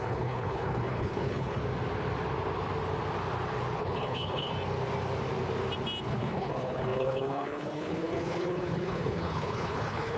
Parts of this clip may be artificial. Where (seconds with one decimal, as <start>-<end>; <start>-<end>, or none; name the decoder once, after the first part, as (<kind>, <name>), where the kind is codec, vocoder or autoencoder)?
0.0-1.6 (codec, HILCodec); 3.8-4.5; 6.0-10.2